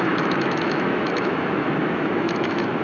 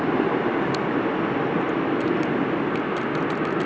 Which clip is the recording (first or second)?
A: second